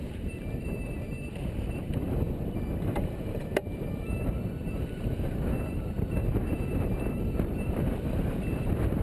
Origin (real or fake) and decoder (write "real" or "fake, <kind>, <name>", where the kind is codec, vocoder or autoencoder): fake, vocoder, BigVGAN v2